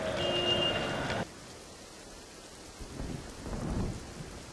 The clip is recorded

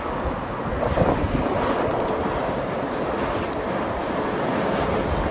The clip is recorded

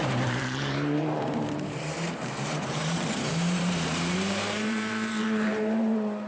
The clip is remade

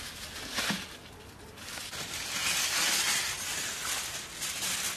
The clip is recorded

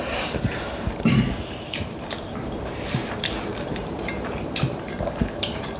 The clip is remade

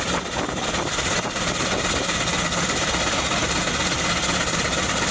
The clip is recorded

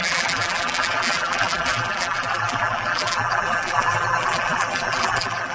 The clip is remade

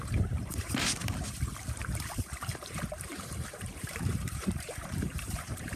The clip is remade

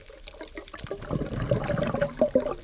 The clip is recorded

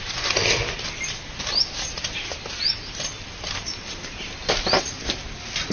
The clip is recorded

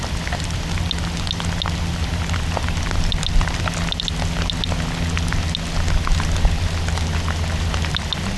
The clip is recorded